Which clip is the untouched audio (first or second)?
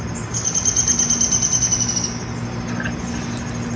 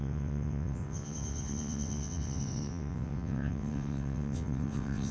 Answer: first